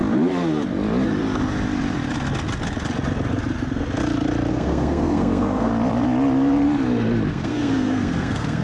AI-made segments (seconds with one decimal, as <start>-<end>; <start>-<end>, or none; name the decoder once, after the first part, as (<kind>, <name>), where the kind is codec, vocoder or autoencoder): 4.5-5.7 (codec, SNAC); 7.3-8.6